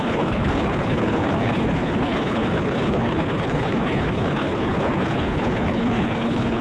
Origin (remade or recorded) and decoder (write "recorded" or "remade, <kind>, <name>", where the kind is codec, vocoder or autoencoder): remade, codec, HILCodec